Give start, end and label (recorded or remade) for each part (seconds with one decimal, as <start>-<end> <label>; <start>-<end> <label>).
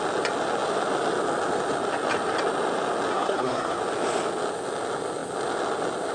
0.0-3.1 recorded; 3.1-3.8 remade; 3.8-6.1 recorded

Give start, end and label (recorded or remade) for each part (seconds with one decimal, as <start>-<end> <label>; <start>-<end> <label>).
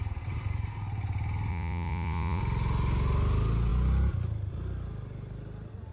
0.0-1.5 recorded; 1.5-2.4 remade; 2.4-5.9 recorded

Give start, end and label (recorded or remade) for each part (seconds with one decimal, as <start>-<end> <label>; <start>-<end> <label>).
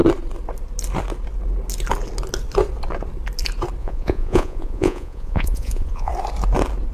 0.0-3.8 recorded; 3.8-6.1 remade; 6.1-6.9 recorded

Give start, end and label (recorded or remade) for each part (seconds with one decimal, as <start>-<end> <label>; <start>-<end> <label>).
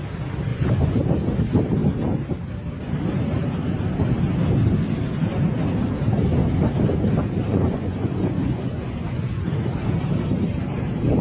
0.0-0.5 recorded; 0.5-1.0 remade; 1.0-7.5 recorded; 7.5-9.2 remade; 9.2-11.2 recorded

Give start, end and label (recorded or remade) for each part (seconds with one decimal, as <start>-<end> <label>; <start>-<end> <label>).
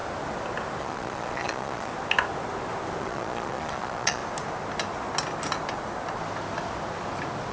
0.0-0.8 recorded; 0.8-1.9 remade; 1.9-3.0 recorded; 3.0-4.2 remade; 4.2-7.5 recorded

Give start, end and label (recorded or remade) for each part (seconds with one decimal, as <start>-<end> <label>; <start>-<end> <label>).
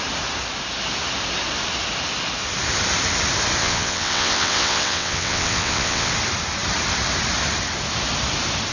0.0-3.6 recorded; 3.6-6.1 remade; 6.1-8.7 recorded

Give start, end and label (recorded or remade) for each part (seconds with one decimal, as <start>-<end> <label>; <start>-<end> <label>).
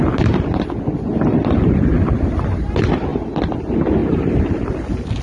0.0-1.3 recorded; 1.3-1.9 remade; 1.9-4.0 recorded; 4.0-4.6 remade; 4.6-5.2 recorded